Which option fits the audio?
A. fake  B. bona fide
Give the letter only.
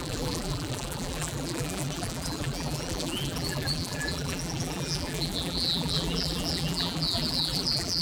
A